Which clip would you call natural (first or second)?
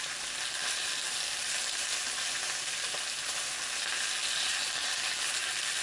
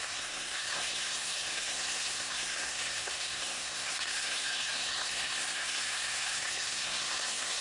first